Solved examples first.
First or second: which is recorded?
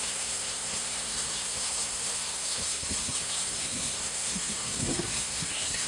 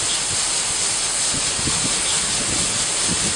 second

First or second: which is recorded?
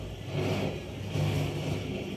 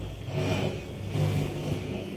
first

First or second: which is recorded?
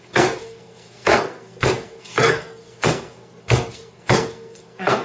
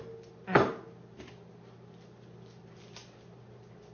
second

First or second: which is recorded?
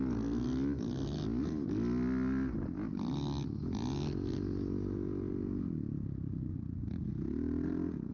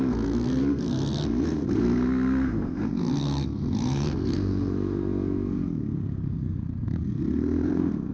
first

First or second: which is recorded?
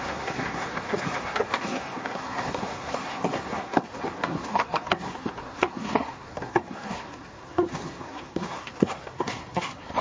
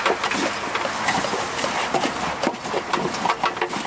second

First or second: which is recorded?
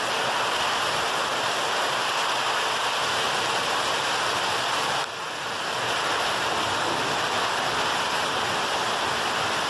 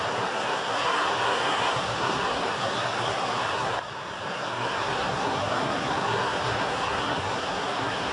first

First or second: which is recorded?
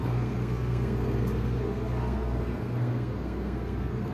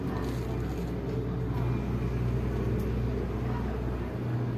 second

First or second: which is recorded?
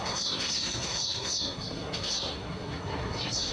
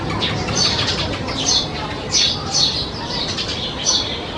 second